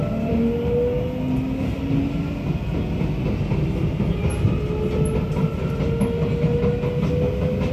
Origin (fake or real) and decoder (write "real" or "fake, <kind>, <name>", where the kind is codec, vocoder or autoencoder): real